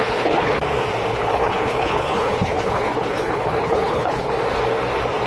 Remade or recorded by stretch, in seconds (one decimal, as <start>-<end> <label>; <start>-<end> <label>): 0.0-0.6 remade; 0.6-1.1 recorded; 1.1-4.3 remade; 4.3-5.3 recorded